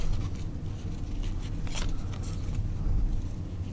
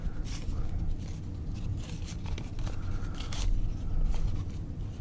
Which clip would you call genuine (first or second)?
first